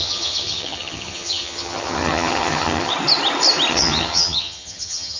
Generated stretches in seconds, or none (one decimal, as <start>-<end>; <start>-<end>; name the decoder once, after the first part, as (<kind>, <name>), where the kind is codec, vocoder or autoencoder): 0.0-2.9 (vocoder, HiFi-GAN); 3.7-5.2